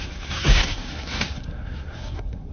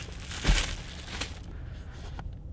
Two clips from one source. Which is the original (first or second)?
second